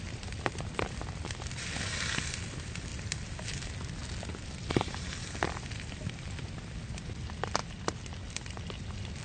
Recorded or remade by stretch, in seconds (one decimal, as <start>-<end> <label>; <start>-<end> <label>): 0.0-9.2 recorded